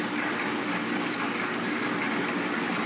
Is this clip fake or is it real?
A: real